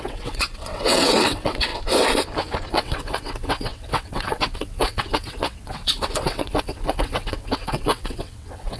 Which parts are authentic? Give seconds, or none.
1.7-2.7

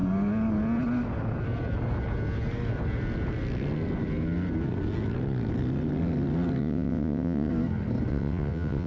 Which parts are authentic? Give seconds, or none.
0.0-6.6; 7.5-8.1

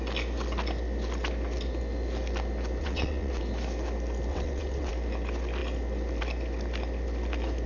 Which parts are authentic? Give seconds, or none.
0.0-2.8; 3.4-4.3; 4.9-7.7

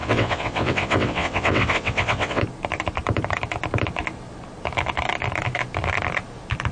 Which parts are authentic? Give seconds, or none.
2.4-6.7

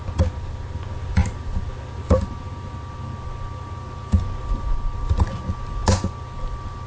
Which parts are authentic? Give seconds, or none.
0.0-6.9

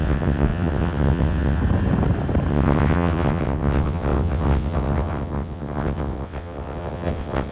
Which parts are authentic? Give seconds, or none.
1.6-2.5